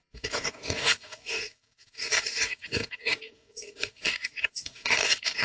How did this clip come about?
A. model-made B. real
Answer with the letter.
A